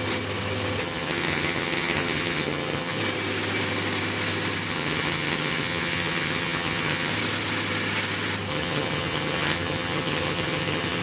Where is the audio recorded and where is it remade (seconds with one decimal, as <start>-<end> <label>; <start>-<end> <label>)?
0.0-0.8 recorded; 0.8-3.0 remade; 3.0-4.7 recorded; 4.7-7.1 remade; 7.1-8.5 recorded; 8.5-11.0 remade